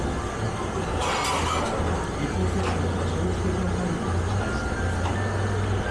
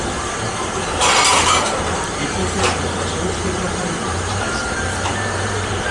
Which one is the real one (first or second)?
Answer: first